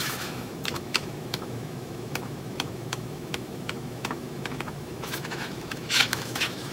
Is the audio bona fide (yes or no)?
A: no